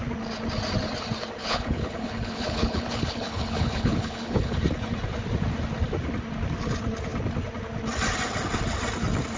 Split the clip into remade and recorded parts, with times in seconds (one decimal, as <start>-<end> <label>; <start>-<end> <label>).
0.0-1.4 recorded; 1.4-4.6 remade; 4.6-9.4 recorded